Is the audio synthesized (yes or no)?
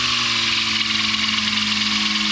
no